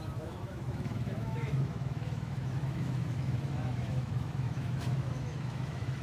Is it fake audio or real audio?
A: fake